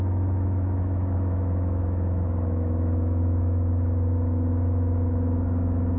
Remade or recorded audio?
remade